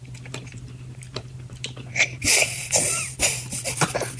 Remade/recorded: recorded